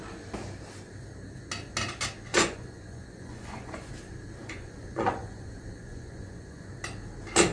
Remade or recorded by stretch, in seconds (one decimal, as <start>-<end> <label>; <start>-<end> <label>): 0.0-2.3 recorded; 2.3-3.9 remade; 3.9-4.4 recorded; 4.4-6.7 remade; 6.7-7.5 recorded

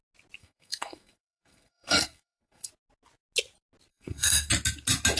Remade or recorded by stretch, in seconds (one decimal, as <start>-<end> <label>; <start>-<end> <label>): 0.0-0.4 recorded; 0.4-2.7 remade; 2.7-3.9 recorded; 3.9-4.5 remade; 4.5-5.2 recorded

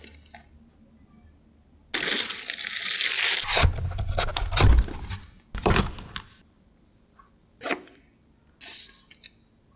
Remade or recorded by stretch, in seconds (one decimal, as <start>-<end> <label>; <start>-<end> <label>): 0.0-4.3 recorded; 4.3-7.4 remade; 7.4-9.8 recorded

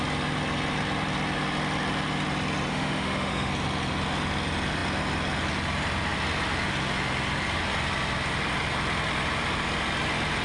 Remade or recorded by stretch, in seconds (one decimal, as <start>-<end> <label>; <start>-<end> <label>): 0.0-2.7 recorded; 2.7-3.5 remade; 3.5-10.4 recorded

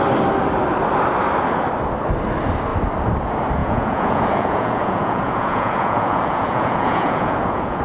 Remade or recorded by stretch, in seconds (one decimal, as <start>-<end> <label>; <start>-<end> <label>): 0.0-3.6 recorded; 3.6-7.8 remade

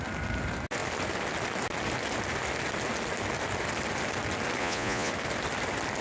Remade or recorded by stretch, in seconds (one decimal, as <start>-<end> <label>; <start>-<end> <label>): 0.0-4.6 recorded; 4.6-5.1 remade; 5.1-6.0 recorded

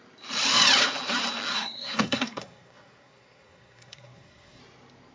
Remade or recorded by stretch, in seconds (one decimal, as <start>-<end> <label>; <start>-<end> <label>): 0.0-1.5 recorded; 1.5-4.6 remade; 4.6-5.1 recorded